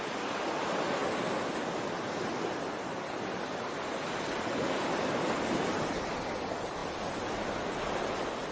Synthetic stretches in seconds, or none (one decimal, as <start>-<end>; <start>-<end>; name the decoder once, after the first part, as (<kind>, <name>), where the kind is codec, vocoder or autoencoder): none